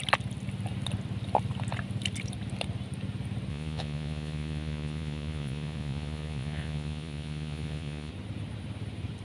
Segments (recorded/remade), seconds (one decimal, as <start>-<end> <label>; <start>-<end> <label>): 0.0-3.5 recorded; 3.5-8.1 remade; 8.1-9.2 recorded